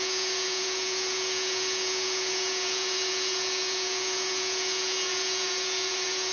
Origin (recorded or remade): remade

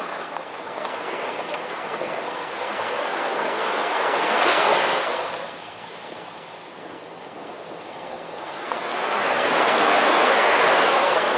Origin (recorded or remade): remade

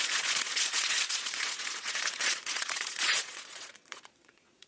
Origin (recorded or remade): remade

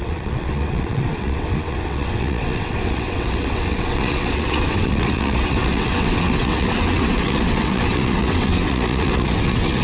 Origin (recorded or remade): remade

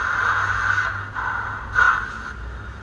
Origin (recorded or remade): recorded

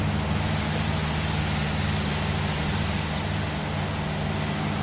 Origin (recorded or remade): recorded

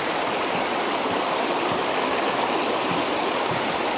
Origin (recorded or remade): remade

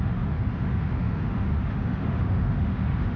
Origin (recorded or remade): remade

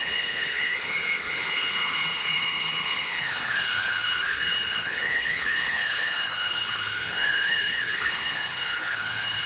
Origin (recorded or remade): remade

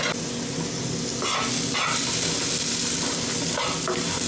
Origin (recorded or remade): recorded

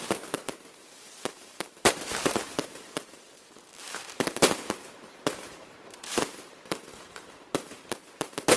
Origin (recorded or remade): remade